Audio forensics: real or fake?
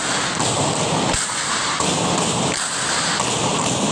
real